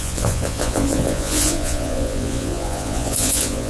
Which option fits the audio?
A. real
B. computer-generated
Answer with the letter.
B